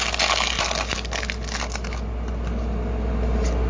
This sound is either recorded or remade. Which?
recorded